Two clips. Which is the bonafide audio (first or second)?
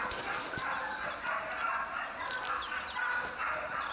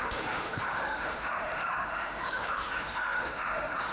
first